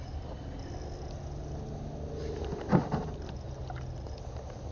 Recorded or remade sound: recorded